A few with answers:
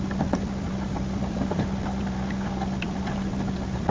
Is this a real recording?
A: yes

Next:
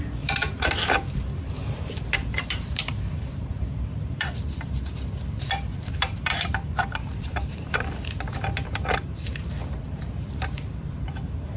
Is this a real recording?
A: no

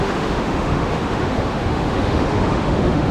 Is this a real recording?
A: no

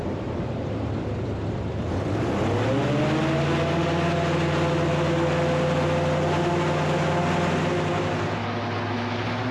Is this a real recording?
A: yes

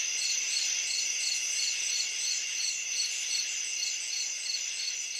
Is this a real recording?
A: no